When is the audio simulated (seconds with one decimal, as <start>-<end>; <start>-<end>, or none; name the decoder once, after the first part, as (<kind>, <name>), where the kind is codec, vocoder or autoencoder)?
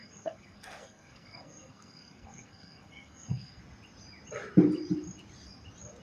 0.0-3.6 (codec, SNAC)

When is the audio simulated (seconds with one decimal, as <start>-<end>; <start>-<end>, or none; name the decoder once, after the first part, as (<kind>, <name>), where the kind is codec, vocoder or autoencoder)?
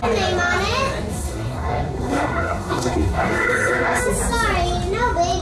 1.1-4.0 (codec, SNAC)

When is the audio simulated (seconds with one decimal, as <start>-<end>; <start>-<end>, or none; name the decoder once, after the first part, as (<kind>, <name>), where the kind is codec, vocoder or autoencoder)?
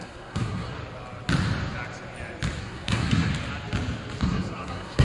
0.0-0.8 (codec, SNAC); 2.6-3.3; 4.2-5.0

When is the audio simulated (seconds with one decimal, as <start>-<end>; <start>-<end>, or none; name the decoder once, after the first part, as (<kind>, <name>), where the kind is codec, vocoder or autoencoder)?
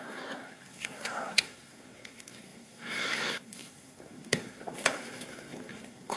0.0-6.2 (codec, SNAC)